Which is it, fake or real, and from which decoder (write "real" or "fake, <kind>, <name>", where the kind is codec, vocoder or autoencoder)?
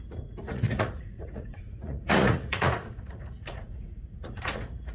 fake, vocoder, Vocos